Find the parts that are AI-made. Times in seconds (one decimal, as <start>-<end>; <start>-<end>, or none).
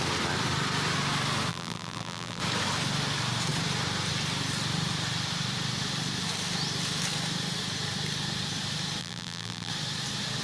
1.5-2.4; 9.0-9.7